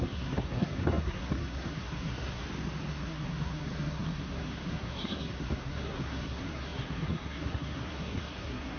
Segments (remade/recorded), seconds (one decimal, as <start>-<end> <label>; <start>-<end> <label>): 0.0-2.4 remade; 2.4-2.9 recorded; 2.9-8.8 remade